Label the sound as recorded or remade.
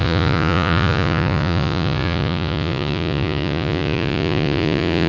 remade